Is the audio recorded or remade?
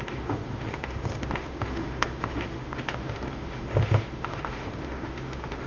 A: remade